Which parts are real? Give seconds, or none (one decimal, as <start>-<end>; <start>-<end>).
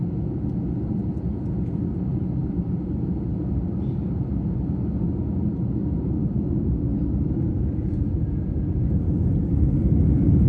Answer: 0.0-2.4; 3.5-10.5